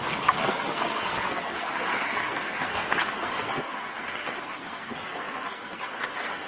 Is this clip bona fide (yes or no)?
no